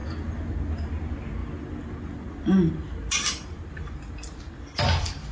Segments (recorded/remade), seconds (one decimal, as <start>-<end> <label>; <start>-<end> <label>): 0.0-5.3 recorded